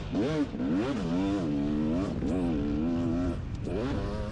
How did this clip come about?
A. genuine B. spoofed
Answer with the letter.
A